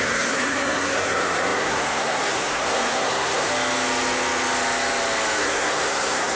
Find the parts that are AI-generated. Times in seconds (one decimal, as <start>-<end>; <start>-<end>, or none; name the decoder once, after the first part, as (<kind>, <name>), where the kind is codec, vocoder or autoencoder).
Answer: 0.0-3.5 (codec, SNAC); 5.4-6.4